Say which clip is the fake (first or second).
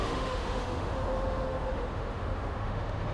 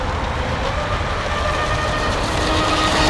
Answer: first